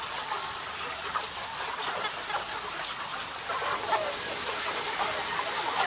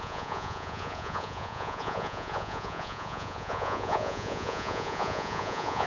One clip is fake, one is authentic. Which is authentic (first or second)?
first